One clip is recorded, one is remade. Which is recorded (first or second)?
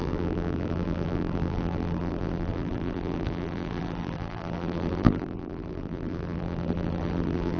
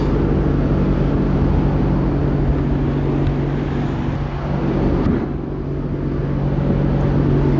second